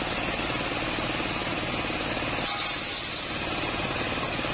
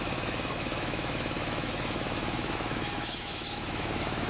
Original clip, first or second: first